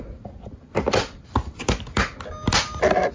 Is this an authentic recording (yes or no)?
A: yes